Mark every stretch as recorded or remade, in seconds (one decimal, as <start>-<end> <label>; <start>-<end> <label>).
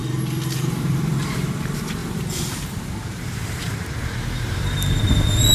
0.0-0.6 recorded; 0.6-5.5 remade